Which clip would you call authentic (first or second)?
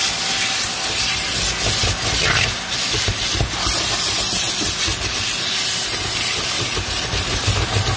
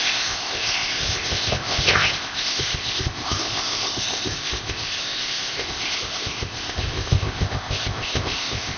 first